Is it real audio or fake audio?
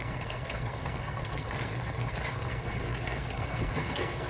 fake